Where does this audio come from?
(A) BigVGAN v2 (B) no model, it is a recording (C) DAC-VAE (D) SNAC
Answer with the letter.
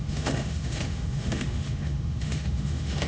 C